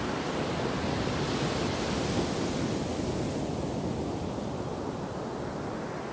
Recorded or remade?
recorded